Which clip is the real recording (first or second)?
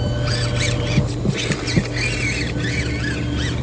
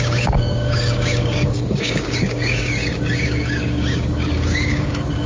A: first